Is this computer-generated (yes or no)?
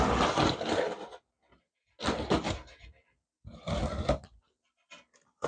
no